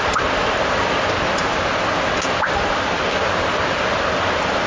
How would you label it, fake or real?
real